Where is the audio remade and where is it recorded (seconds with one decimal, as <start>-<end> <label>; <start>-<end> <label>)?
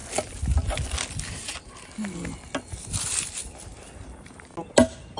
0.0-5.2 recorded